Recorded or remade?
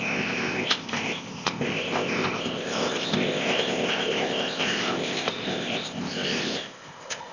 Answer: remade